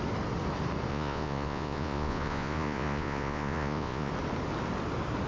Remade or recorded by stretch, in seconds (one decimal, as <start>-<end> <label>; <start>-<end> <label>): 0.0-0.9 recorded; 0.9-4.1 remade; 4.1-5.3 recorded